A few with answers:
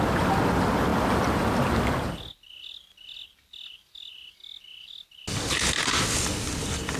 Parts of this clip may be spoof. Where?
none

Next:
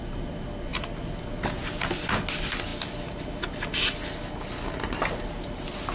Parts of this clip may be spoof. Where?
none

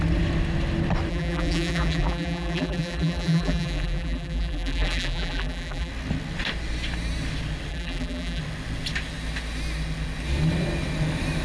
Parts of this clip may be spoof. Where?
1.1-5.9 (vocoder, BigVGAN v2); 7.7-8.4

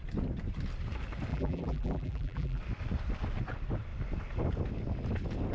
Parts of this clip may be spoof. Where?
1.3-2.6 (vocoder, BigVGAN v2)

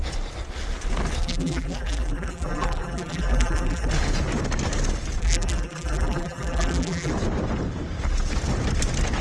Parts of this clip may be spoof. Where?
1.2-3.9 (vocoder, BigVGAN v2); 5.2-7.1